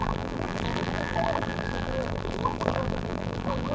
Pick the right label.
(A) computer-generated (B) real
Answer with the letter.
A